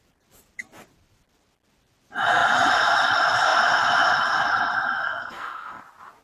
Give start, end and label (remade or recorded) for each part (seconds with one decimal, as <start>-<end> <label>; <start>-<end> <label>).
0.0-5.0 recorded; 5.0-5.8 remade; 5.8-6.2 recorded